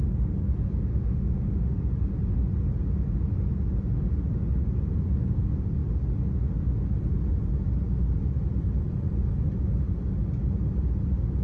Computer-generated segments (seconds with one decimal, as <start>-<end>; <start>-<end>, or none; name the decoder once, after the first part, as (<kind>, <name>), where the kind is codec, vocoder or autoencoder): 0.9-1.8 (autoencoder, DAC-VAE)